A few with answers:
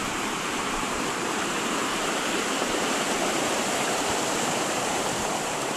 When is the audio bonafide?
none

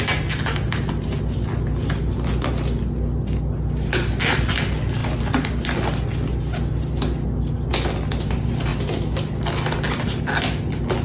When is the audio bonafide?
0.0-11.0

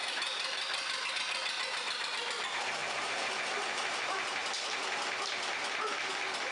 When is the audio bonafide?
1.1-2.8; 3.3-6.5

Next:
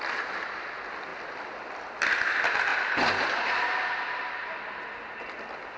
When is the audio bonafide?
0.0-1.1; 1.7-2.7; 3.4-5.8